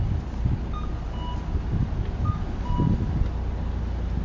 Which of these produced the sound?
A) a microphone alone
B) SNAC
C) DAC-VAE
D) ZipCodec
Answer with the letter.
A